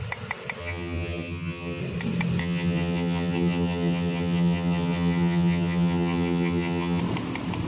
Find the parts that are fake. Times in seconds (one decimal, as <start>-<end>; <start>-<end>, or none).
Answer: 0.6-1.8; 2.4-7.0